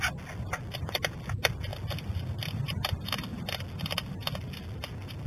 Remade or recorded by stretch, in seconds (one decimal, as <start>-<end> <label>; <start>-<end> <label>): 0.0-5.3 recorded